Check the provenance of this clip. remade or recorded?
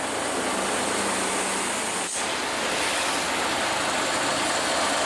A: recorded